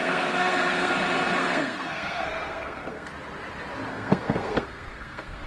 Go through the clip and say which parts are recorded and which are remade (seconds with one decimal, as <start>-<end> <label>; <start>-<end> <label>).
0.0-0.9 remade; 0.9-1.4 recorded; 1.4-3.1 remade; 3.1-3.9 recorded; 3.9-5.5 remade